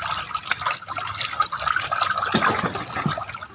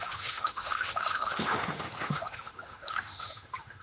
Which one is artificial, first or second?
second